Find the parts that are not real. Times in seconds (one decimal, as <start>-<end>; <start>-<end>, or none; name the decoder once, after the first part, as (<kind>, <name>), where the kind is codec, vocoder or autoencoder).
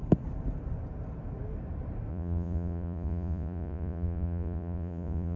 2.1-5.4 (vocoder, Vocos)